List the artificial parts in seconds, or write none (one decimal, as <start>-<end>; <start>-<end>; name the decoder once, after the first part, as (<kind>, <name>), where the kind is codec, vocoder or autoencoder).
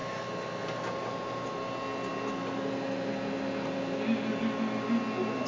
none